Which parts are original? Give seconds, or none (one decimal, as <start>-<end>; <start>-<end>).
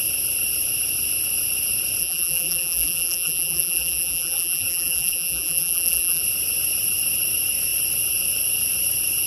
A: 0.0-2.0; 6.2-9.3